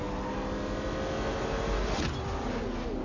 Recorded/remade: recorded